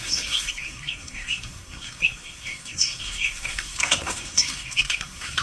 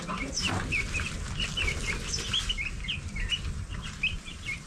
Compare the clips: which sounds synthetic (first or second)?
first